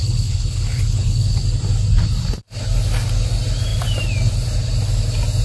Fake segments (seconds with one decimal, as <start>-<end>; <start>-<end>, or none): 0.0-1.4